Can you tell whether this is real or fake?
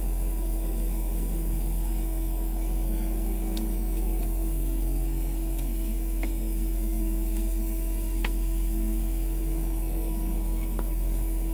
fake